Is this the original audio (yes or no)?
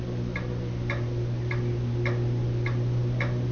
yes